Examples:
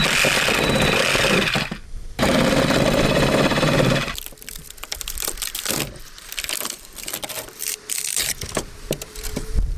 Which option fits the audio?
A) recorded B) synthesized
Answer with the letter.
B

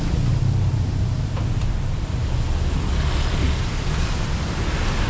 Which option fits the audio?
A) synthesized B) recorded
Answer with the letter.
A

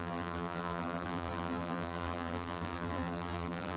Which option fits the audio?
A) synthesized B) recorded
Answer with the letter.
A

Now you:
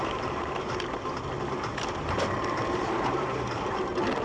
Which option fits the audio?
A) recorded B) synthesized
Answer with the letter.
B